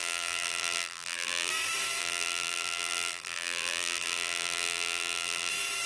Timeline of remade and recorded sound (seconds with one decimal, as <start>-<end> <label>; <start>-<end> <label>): 0.0-1.5 remade; 1.5-2.0 recorded; 2.0-5.5 remade; 5.5-5.9 recorded